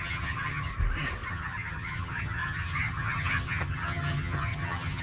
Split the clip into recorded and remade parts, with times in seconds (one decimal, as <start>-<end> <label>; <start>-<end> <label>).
0.0-0.7 remade; 0.7-1.3 recorded; 1.3-5.0 remade